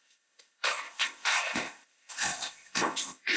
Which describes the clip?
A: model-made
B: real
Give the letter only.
A